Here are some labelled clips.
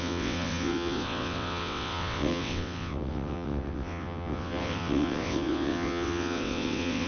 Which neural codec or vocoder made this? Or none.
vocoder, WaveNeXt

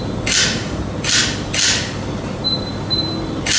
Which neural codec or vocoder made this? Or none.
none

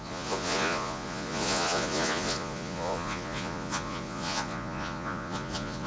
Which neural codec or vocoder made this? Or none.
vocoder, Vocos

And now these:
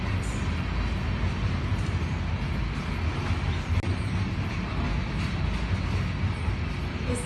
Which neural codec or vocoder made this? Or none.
none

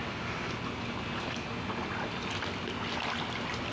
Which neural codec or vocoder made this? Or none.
none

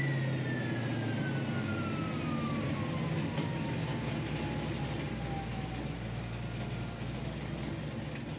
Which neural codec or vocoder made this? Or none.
none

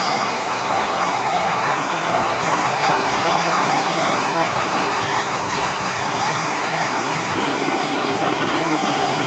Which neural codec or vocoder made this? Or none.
codec, SNAC